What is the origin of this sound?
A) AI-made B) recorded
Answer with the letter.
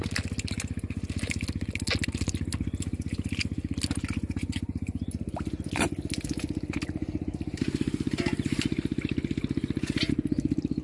B